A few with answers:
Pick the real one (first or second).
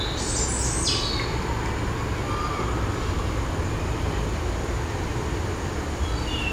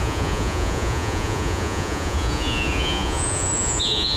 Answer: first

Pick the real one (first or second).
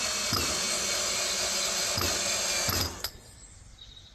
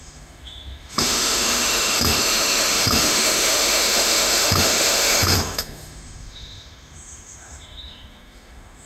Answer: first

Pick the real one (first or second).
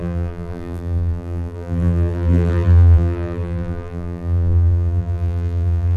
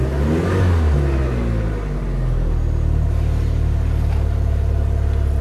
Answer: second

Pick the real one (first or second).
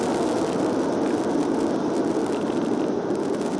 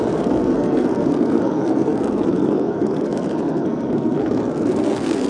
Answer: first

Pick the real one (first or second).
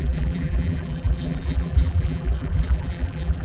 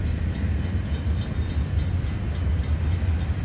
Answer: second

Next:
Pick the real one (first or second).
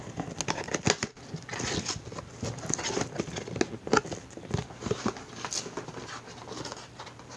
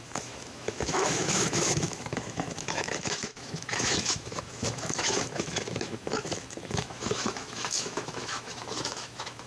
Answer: first